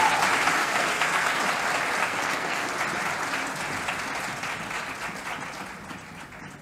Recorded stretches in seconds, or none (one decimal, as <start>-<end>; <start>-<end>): 0.0-0.6; 1.4-2.0; 2.7-6.6